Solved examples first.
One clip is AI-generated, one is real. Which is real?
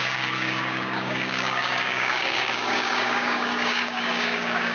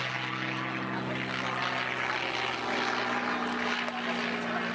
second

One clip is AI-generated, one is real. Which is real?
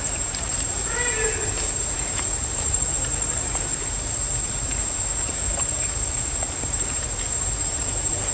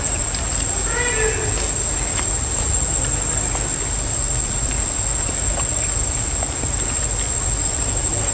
second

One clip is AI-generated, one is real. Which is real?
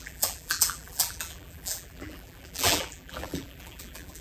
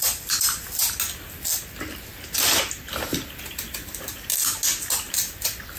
second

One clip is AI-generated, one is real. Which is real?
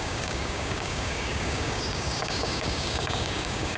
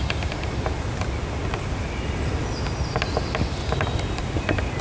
second